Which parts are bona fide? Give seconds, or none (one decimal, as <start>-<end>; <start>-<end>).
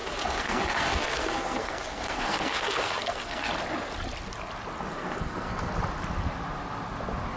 3.5-4.9; 5.7-7.4